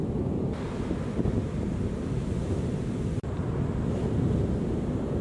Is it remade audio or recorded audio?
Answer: recorded